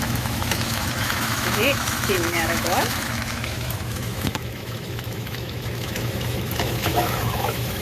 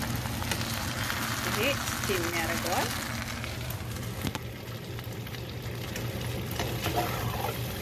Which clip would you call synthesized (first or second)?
first